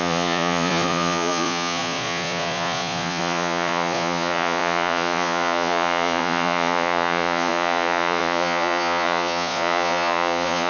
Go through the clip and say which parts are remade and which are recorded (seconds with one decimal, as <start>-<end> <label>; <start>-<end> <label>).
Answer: 0.0-10.7 remade